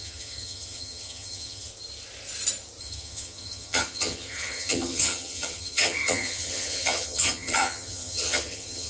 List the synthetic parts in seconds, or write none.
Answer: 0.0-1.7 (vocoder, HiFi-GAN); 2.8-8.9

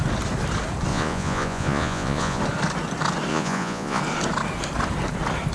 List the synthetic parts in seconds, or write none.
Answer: 0.9-2.4 (vocoder, Vocos); 3.3-4.0

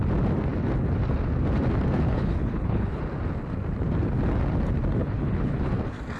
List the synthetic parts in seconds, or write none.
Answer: 2.1-3.0 (codec, HILCodec); 5.0-5.7

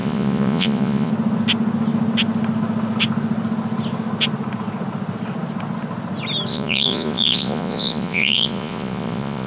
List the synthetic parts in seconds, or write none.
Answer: 0.0-1.1 (vocoder, Vocos); 6.5-9.5

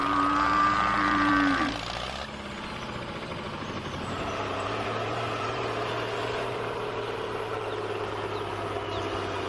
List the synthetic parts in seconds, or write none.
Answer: 0.0-1.3 (vocoder, BigVGAN v2); 3.3-7.6

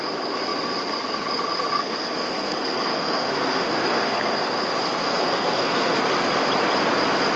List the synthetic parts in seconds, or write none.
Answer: 1.8-4.3 (codec, SNAC); 5.0-6.0

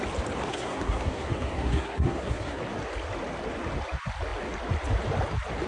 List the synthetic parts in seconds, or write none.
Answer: 0.5-2.6 (codec, SNAC)